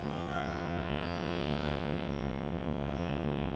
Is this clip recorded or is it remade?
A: remade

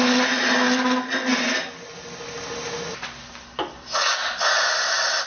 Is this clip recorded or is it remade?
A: recorded